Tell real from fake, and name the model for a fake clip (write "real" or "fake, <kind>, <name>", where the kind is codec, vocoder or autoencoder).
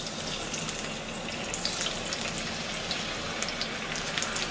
real